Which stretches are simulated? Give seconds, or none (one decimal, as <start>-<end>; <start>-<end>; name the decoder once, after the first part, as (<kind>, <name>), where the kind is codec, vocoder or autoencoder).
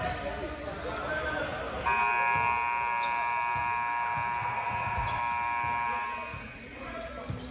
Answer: 4.4-5.2 (vocoder, Vocos); 6.3-7.1